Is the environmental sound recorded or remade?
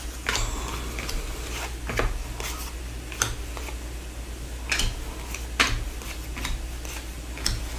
recorded